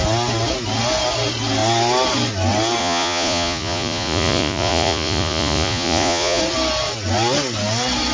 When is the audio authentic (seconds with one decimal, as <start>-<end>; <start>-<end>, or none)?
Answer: 0.0-2.8; 6.4-8.1